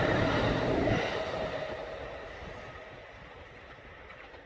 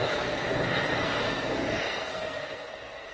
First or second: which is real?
first